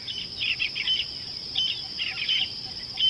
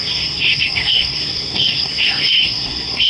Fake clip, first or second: second